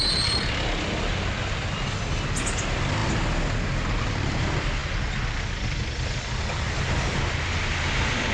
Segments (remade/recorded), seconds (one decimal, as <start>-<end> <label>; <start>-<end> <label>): 0.0-8.3 recorded